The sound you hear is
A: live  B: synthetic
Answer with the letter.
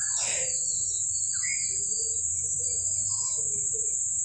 A